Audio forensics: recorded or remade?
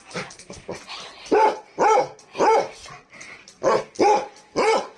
remade